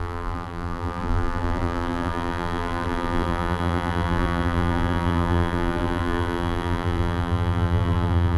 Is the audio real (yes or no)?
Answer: no